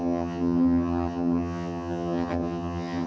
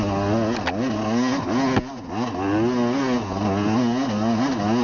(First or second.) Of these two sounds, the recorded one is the second